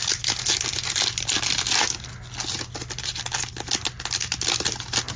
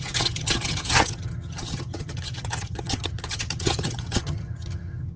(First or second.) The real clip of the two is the first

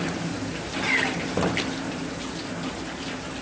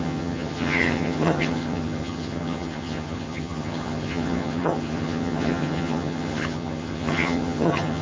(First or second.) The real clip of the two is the first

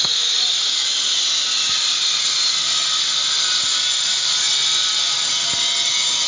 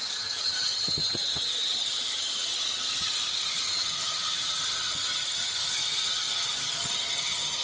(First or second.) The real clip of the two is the first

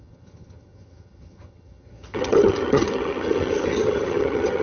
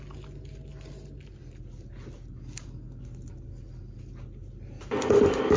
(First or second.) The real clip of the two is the second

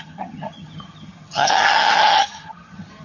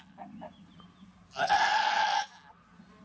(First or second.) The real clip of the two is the second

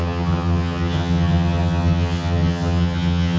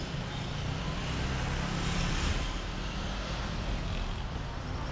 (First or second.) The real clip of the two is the second